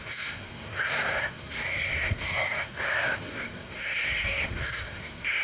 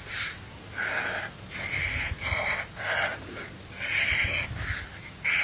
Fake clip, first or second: first